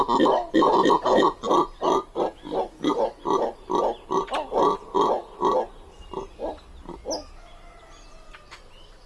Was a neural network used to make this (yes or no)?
no